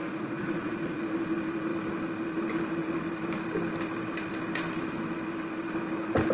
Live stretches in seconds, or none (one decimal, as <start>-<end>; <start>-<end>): 1.0-6.3